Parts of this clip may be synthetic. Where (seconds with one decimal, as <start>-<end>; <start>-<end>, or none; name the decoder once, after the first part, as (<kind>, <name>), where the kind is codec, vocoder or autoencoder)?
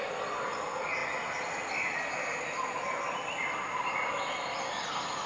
none